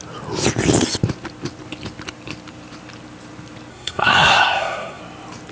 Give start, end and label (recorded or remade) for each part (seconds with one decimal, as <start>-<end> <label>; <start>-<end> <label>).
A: 0.0-3.7 recorded; 3.7-5.0 remade; 5.0-5.5 recorded